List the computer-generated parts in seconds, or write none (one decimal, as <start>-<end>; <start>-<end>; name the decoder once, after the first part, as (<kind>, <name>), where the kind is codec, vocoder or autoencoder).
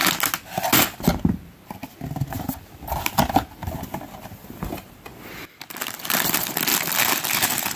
none